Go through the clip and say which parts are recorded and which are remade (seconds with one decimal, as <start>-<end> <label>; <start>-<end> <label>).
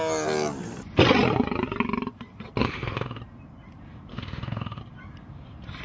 0.0-2.6 recorded; 2.6-3.2 remade; 3.2-4.1 recorded; 4.1-4.8 remade; 4.8-5.8 recorded